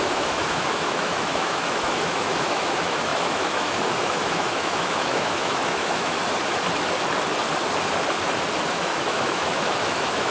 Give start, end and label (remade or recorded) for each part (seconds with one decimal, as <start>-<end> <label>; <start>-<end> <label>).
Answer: 0.0-6.2 remade; 6.2-8.7 recorded; 8.7-10.3 remade